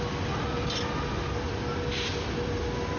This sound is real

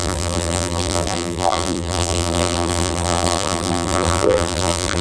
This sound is fake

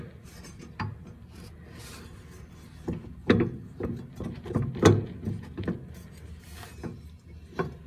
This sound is real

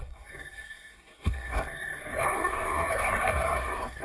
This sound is fake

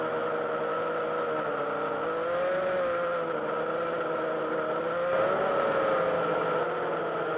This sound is real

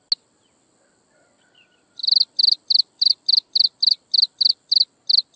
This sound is real